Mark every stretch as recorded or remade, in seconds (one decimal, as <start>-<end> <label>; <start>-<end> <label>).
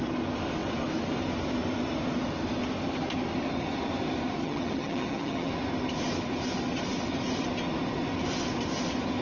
0.0-4.4 recorded; 4.4-5.5 remade; 5.5-9.2 recorded